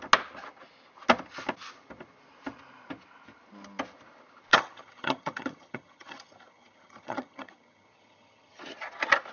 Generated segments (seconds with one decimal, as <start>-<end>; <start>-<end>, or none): 4.5-8.6